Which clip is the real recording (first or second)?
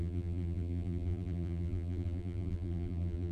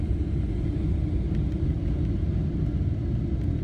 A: second